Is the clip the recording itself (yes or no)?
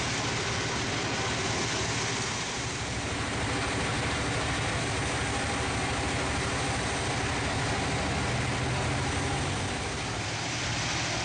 yes